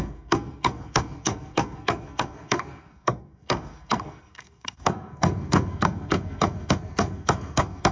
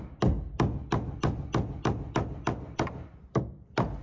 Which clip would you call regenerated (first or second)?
first